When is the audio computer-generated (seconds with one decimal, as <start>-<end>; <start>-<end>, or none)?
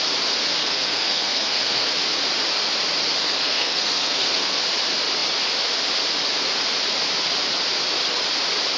0.6-1.9; 3.2-4.6